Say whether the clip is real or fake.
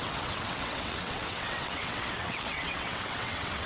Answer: fake